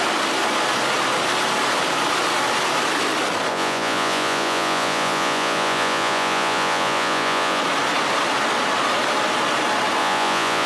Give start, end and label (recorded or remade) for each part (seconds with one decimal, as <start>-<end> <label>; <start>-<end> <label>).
0.0-3.5 recorded; 3.5-7.6 remade; 7.6-10.0 recorded; 10.0-10.7 remade